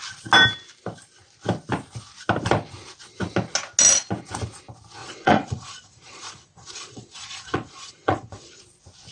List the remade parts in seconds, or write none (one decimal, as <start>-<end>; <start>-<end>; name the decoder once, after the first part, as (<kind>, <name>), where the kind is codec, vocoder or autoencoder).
5.0-8.6 (vocoder, Vocos)